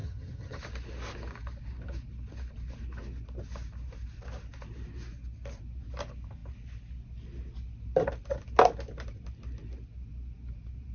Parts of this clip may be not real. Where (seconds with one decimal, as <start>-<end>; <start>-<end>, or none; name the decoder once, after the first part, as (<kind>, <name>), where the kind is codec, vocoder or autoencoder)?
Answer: 0.0-0.6 (vocoder, HiFi-GAN)